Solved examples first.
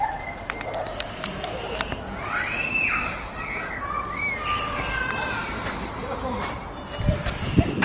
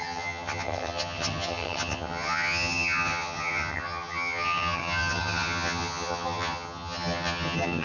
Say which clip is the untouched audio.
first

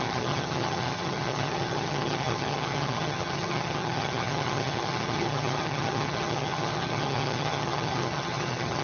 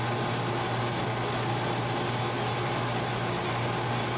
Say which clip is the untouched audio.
second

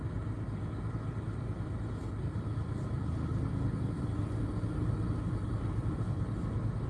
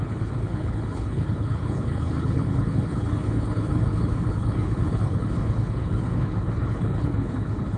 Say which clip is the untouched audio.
first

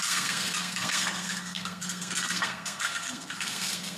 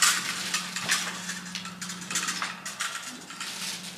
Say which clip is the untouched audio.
second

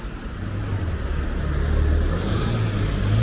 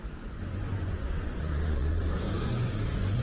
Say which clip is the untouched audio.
first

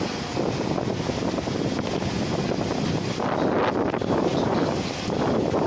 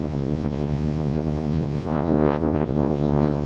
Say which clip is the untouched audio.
first